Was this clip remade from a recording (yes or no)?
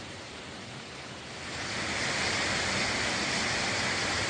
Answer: no